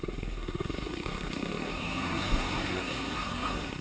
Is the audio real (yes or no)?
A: no